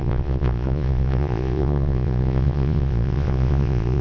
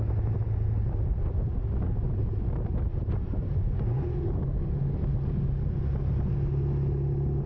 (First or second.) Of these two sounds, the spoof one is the first